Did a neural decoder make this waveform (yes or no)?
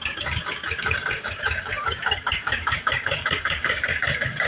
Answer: yes